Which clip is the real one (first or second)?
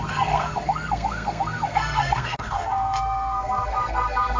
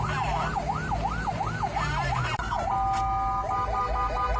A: second